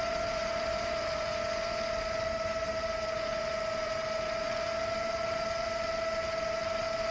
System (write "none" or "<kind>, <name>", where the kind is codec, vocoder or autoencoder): vocoder, BigVGAN v2